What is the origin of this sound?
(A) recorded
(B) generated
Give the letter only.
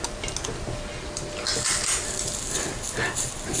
A